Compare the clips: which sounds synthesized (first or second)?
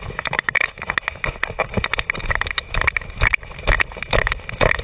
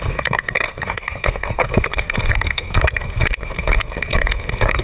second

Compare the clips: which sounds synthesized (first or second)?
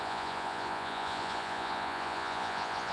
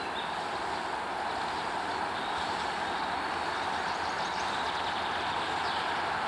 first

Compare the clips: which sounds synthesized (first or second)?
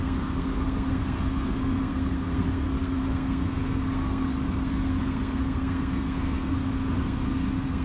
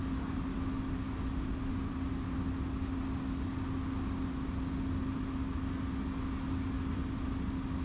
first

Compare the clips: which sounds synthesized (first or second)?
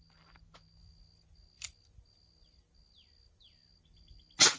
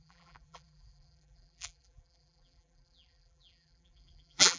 second